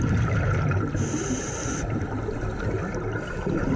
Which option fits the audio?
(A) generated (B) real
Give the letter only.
B